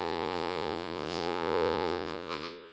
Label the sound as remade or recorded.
remade